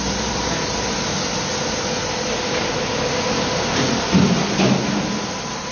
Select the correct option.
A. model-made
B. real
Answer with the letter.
B